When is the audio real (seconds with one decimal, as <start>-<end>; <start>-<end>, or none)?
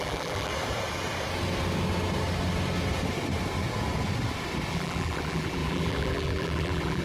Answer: 0.5-4.7